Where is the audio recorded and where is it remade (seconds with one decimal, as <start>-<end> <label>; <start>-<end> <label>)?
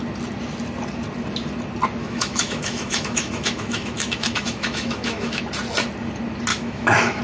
0.0-2.0 recorded; 2.0-5.4 remade; 5.4-6.5 recorded; 6.5-7.2 remade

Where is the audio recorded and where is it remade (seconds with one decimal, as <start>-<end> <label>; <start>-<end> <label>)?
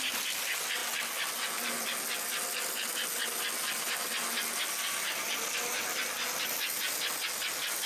0.0-7.9 recorded